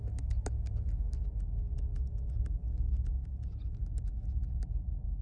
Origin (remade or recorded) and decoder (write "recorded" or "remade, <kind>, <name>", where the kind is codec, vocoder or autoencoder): recorded